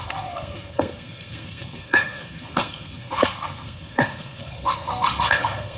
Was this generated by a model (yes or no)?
yes